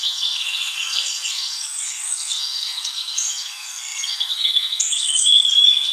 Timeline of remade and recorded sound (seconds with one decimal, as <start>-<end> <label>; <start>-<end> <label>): 0.0-5.9 remade